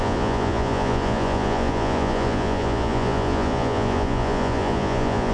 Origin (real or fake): fake